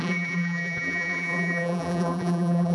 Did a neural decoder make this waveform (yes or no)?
yes